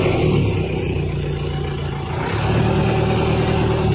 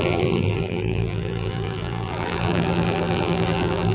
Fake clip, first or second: second